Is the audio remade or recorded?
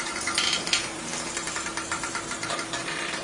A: remade